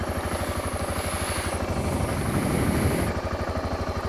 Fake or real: real